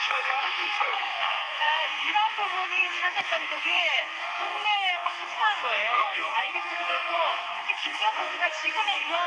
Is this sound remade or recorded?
remade